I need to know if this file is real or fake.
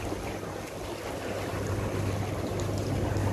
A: real